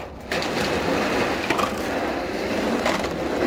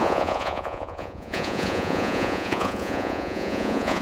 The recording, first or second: first